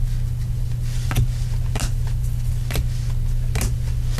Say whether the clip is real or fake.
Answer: real